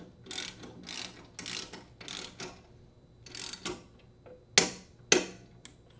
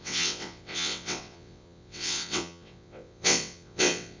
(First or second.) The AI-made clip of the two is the second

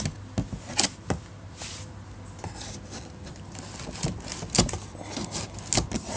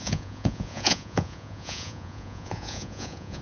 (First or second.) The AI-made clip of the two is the second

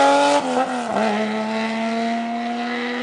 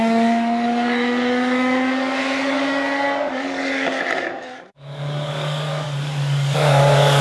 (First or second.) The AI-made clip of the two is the second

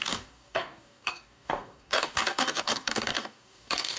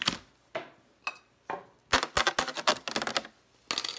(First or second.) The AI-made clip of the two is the first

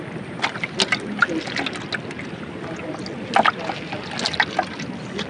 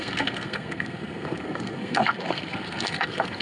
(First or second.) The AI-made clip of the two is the second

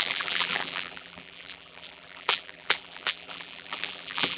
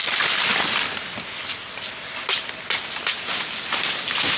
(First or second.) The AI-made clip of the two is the first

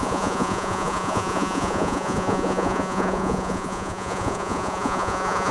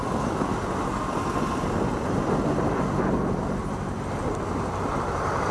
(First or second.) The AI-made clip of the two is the first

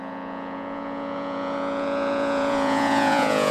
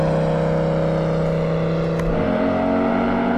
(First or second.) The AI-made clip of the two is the first